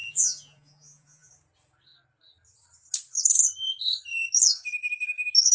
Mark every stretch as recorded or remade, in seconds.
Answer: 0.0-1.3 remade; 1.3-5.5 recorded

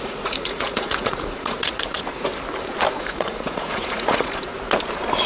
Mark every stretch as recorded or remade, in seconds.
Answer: 0.0-2.3 remade; 2.3-2.9 recorded; 2.9-4.5 remade; 4.5-5.3 recorded

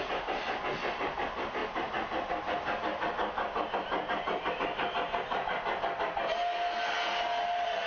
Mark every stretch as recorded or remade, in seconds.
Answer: 0.0-7.9 recorded